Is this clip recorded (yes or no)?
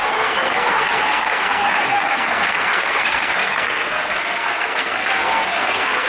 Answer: no